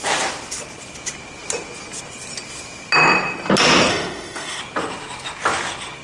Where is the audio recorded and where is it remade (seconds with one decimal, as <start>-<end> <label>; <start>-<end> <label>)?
0.0-3.9 recorded; 3.9-4.6 remade; 4.6-6.0 recorded